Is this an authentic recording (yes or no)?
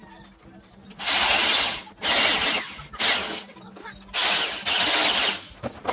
yes